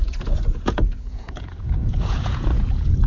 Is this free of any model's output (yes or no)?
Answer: no